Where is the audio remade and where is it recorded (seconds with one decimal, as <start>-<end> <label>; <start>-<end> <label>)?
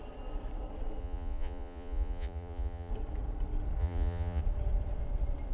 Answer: 0.0-1.0 recorded; 1.0-2.9 remade; 2.9-3.8 recorded; 3.8-4.4 remade; 4.4-5.5 recorded